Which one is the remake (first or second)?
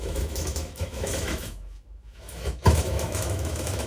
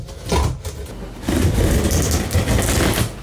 first